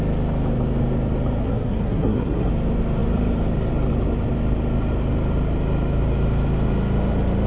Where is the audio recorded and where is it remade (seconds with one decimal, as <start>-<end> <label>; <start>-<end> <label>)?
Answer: 0.0-1.4 recorded; 1.4-2.5 remade; 2.5-7.5 recorded